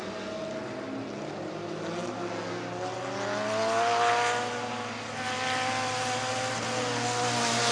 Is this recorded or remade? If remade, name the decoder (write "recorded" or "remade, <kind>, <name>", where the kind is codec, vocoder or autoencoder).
recorded